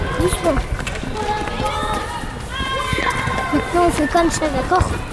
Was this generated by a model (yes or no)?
no